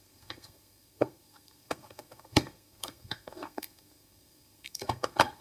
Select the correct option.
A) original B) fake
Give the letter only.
B